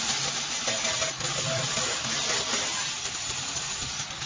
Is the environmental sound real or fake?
real